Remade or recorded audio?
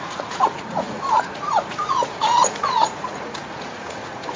remade